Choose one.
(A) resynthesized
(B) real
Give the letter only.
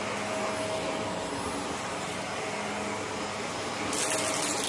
B